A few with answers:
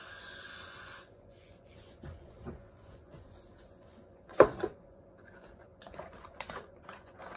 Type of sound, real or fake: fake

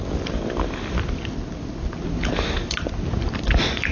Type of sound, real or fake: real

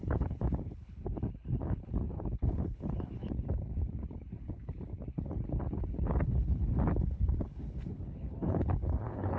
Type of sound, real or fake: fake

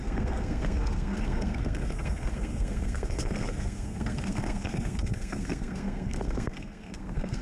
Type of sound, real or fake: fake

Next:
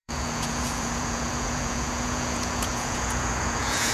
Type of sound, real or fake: fake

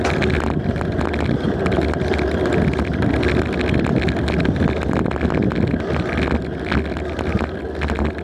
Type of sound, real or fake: real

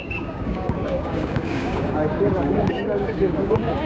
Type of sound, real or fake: fake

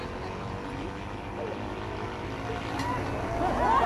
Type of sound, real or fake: real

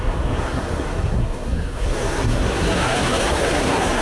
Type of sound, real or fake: fake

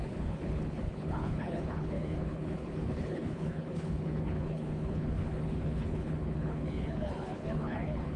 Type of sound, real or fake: fake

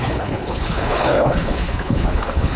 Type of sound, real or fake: fake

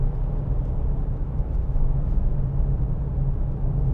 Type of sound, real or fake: real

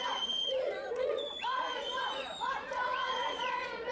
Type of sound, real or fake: fake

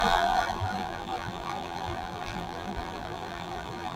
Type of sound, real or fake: fake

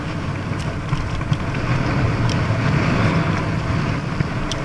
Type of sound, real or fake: real